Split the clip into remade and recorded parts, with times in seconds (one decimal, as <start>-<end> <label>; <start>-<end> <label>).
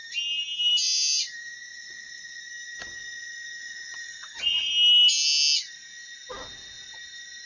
0.0-1.7 recorded; 1.7-2.4 remade; 2.4-3.6 recorded; 3.6-4.7 remade; 4.7-7.5 recorded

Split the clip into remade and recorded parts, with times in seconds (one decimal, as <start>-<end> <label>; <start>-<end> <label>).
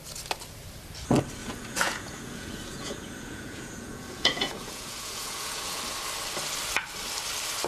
0.0-1.4 recorded; 1.4-5.8 remade; 5.8-7.7 recorded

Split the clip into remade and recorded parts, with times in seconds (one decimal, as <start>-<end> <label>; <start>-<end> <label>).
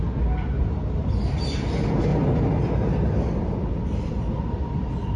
0.0-5.2 recorded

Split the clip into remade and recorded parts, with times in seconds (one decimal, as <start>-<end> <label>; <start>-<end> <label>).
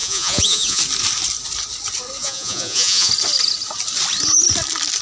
0.0-0.8 remade; 0.8-2.2 recorded; 2.2-3.1 remade; 3.1-5.0 recorded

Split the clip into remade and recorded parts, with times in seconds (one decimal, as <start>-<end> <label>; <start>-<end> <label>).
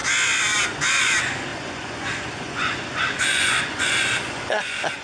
0.0-0.7 recorded; 0.7-5.0 remade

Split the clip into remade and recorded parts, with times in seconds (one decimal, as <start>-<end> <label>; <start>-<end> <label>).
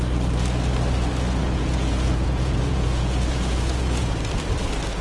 0.0-1.4 recorded; 1.4-4.1 remade; 4.1-5.0 recorded